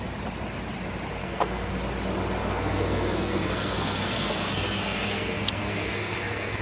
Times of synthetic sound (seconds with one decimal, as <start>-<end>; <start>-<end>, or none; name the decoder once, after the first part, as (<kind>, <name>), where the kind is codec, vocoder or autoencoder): 1.2-1.7 (codec, SNAC); 2.4-6.6